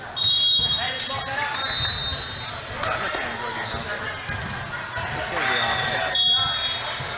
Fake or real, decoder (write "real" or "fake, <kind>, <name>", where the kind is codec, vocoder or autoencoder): real